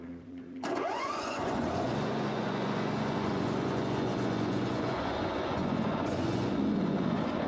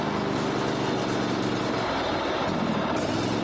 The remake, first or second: first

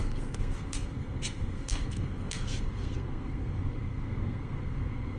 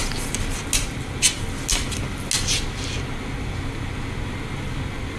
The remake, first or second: first